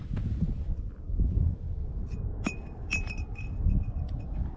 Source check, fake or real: real